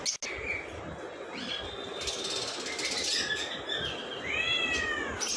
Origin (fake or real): real